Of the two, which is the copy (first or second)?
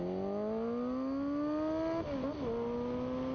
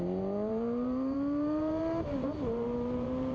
second